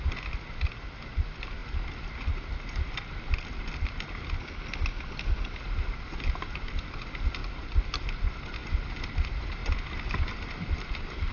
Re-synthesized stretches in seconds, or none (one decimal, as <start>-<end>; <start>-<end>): none